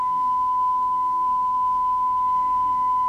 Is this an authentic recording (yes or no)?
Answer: no